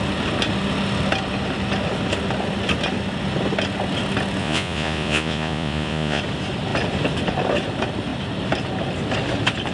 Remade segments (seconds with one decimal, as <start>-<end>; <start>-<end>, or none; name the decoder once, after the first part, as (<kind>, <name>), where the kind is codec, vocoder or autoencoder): 4.4-6.2 (vocoder, Vocos)